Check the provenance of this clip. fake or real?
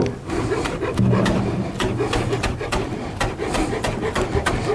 real